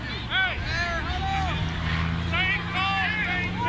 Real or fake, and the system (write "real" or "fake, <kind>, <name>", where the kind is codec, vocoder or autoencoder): real